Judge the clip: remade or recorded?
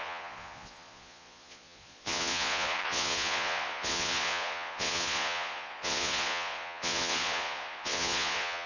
remade